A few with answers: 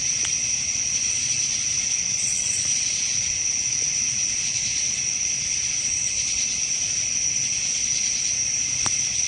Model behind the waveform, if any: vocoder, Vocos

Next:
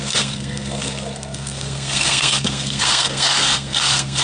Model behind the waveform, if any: codec, SNAC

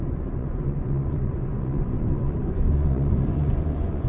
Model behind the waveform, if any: vocoder, Vocos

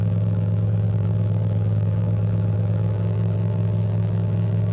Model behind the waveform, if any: vocoder, BigVGAN v2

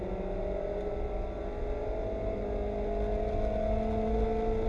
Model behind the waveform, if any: none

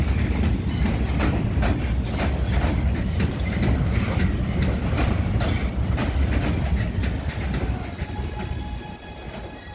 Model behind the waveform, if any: none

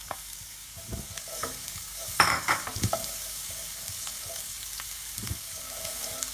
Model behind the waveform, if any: codec, DAC